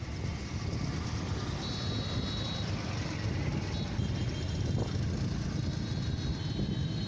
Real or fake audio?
real